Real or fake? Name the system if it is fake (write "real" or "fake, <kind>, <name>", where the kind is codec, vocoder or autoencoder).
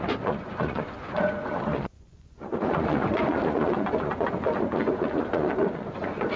fake, vocoder, Vocos